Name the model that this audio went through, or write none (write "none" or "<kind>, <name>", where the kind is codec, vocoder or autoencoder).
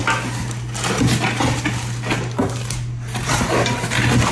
none